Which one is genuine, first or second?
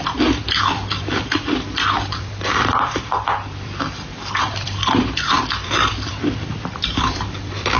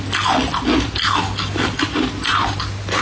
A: second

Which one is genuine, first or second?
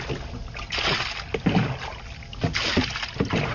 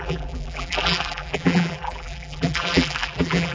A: first